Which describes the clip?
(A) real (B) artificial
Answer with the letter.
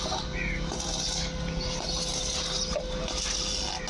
A